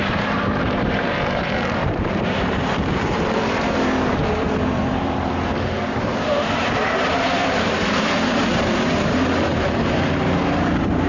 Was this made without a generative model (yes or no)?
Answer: no